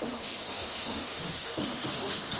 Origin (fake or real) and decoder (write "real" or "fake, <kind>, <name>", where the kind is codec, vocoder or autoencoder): fake, autoencoder, DAC-VAE